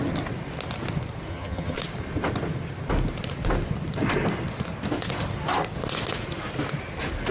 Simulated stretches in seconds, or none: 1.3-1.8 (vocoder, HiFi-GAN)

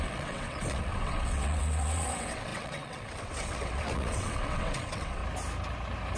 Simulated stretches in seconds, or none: 0.0-5.2 (vocoder, WaveNeXt)

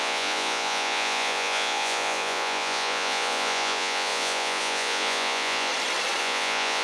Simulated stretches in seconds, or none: 0.0-5.7 (vocoder, Vocos); 6.2-6.8

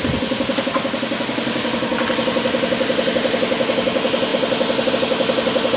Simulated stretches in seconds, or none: none

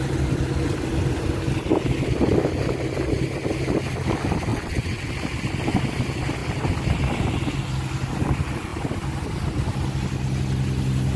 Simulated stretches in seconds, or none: 4.5-5.1 (vocoder, WaveNeXt)

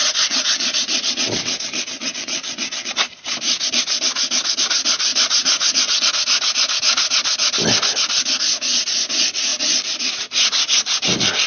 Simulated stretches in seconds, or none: 0.0-2.9 (vocoder, WaveNeXt); 5.1-6.1